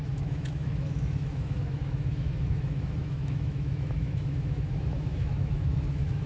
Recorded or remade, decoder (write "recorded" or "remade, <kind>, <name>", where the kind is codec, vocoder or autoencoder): remade, autoencoder, DAC-VAE